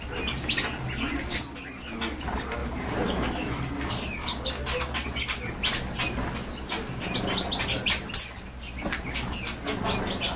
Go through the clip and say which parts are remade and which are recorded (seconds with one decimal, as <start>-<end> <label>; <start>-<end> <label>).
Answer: 0.0-2.6 recorded; 2.6-3.3 remade; 3.3-10.4 recorded